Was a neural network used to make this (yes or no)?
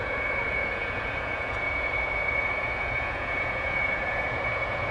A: yes